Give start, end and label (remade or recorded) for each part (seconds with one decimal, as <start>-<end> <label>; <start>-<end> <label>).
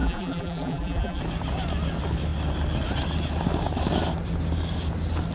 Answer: 0.0-1.2 remade; 1.2-5.3 recorded